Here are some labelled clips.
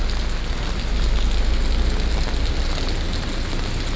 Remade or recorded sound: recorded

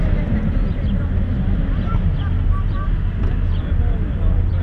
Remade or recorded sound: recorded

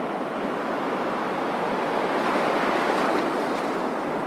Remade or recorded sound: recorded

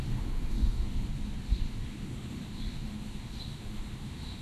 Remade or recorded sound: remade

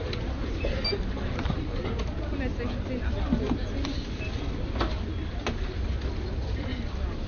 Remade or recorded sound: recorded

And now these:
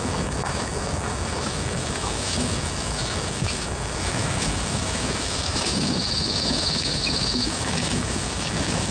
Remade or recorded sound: remade